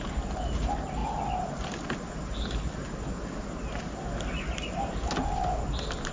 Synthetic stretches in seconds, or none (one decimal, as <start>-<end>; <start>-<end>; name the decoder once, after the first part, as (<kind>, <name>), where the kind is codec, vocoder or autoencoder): none